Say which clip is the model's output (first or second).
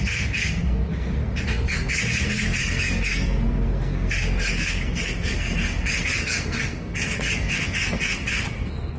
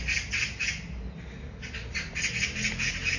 first